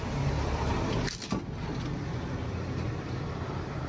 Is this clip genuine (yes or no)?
yes